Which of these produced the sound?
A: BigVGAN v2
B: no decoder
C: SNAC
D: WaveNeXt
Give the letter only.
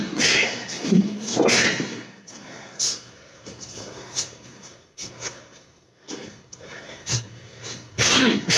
C